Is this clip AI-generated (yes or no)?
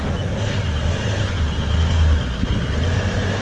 no